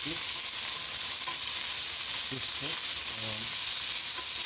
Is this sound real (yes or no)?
yes